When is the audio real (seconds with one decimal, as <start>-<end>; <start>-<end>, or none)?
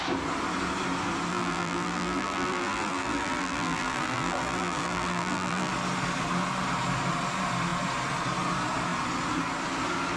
0.0-1.3; 5.7-10.2